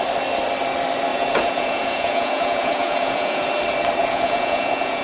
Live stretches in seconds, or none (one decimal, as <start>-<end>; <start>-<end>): 0.0-1.1; 3.5-4.0